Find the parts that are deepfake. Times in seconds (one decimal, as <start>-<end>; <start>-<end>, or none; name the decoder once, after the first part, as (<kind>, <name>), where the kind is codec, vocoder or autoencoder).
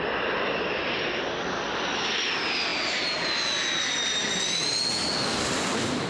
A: none